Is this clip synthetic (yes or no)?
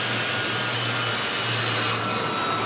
no